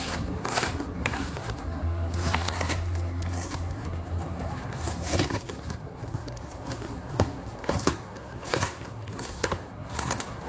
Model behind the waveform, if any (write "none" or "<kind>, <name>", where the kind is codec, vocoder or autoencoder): codec, SNAC